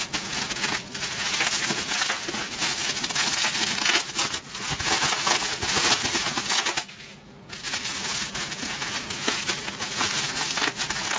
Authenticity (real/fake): real